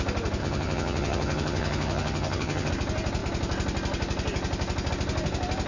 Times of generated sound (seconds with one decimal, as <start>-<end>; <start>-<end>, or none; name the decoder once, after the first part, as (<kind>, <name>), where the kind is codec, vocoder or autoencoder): 0.4-2.7 (vocoder, HiFi-GAN)